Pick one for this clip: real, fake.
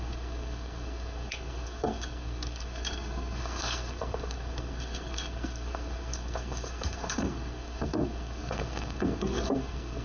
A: fake